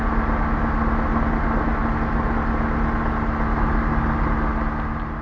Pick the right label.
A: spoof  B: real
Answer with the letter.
B